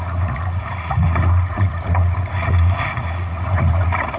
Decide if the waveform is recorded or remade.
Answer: remade